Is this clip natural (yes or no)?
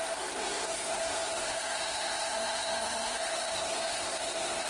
no